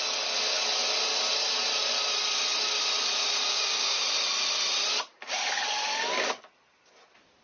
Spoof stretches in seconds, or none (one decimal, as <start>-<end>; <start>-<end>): 3.4-4.0